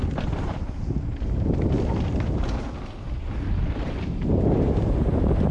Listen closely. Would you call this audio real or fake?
real